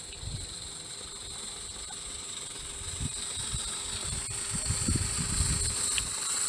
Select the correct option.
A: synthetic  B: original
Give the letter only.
B